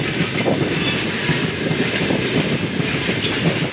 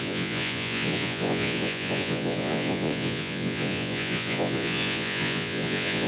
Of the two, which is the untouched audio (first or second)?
first